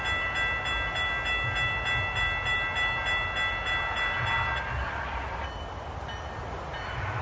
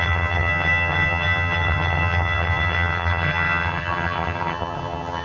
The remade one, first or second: second